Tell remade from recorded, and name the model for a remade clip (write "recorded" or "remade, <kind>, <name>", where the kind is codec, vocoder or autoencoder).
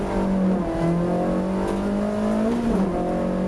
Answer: recorded